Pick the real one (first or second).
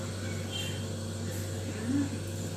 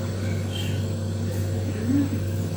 first